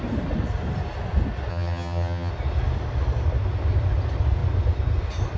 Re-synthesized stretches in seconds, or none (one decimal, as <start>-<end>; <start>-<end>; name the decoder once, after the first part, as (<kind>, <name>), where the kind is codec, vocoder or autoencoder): 1.5-2.3 (vocoder, HiFi-GAN)